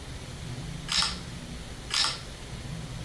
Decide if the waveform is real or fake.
real